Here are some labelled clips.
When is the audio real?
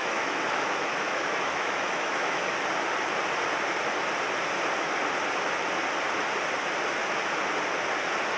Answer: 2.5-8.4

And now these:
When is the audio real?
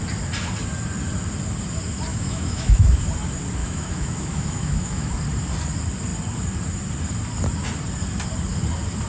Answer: 0.0-2.1; 3.0-3.6; 5.1-9.1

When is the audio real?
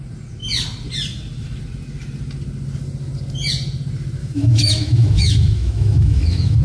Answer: 0.0-4.2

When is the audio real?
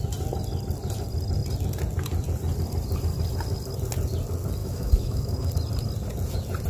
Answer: 0.0-4.6; 5.5-6.7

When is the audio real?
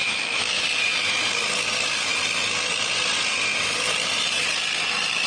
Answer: 0.6-5.3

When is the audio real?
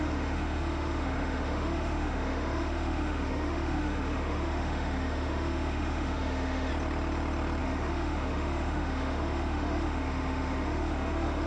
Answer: 6.7-7.6